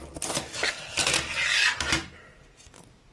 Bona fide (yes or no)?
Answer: yes